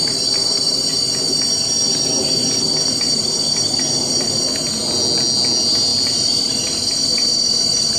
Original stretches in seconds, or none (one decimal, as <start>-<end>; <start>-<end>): 0.0-8.0